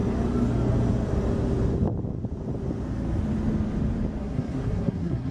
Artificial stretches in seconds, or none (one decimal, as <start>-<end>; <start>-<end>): 4.2-5.3